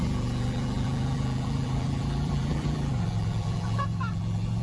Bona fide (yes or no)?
no